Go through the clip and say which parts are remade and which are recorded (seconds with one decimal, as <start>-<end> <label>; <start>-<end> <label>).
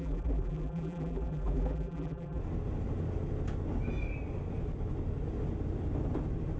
0.0-2.4 remade; 2.4-6.6 recorded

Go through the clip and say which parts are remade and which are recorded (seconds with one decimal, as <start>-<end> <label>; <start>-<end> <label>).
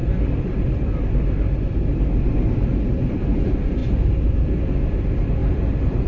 0.0-1.0 remade; 1.0-3.8 recorded; 3.8-4.6 remade; 4.6-5.4 recorded; 5.4-6.1 remade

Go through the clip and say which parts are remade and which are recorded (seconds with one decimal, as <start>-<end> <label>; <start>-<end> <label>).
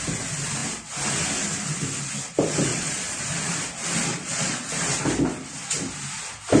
0.0-2.7 recorded; 2.7-3.2 remade; 3.2-4.1 recorded; 4.1-4.7 remade; 4.7-6.6 recorded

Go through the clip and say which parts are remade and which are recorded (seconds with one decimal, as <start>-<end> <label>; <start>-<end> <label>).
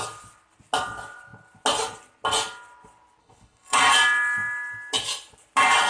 0.0-3.2 recorded; 3.2-3.8 remade; 3.8-5.9 recorded